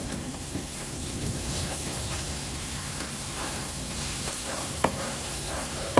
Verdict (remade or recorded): remade